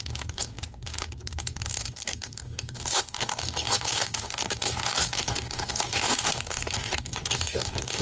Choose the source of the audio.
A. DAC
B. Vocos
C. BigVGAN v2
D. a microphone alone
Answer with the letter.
A